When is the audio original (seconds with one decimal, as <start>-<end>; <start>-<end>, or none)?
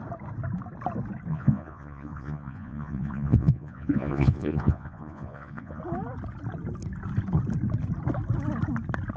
0.0-1.3; 5.8-9.2